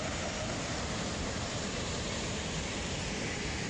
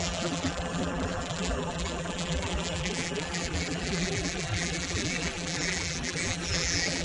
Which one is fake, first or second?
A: second